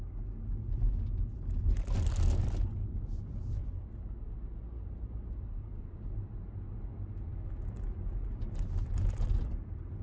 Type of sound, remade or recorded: recorded